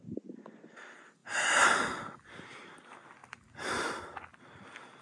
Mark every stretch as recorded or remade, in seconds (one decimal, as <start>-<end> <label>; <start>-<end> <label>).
0.0-3.2 recorded; 3.2-4.0 remade; 4.0-5.0 recorded

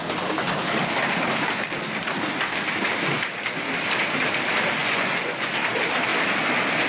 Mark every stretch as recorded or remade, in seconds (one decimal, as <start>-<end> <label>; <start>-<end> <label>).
0.0-4.8 recorded; 4.8-5.5 remade; 5.5-6.9 recorded

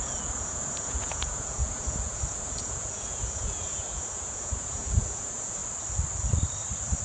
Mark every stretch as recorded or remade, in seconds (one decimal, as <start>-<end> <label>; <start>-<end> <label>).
0.0-5.6 remade; 5.6-7.0 recorded

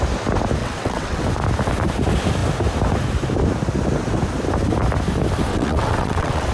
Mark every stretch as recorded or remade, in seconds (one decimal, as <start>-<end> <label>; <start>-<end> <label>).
0.0-0.6 recorded; 0.6-1.2 remade; 1.2-5.5 recorded; 5.5-6.5 remade